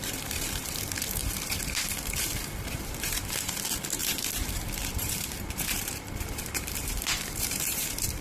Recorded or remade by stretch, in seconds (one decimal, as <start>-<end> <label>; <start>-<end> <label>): 0.0-8.2 remade